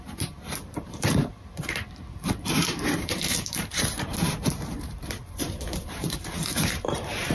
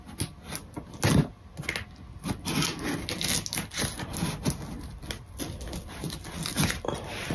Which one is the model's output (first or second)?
first